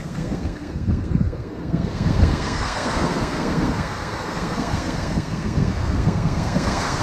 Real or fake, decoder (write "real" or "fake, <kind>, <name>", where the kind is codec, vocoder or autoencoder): fake, codec, SNAC